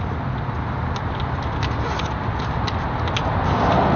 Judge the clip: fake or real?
real